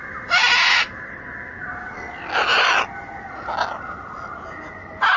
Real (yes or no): yes